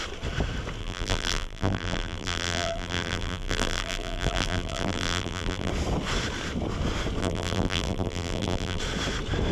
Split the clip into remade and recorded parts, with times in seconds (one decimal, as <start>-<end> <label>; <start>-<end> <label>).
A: 0.0-0.8 recorded; 0.8-5.7 remade; 5.7-7.2 recorded; 7.2-8.8 remade; 8.8-9.5 recorded